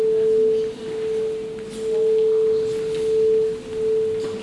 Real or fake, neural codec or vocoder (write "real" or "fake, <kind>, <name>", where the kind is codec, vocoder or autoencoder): real